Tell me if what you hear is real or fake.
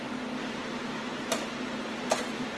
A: real